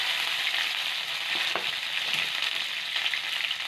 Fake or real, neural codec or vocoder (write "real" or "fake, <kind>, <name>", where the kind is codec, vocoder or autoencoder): real